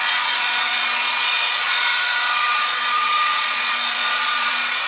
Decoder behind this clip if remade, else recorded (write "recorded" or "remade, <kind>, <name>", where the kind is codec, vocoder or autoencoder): remade, vocoder, Vocos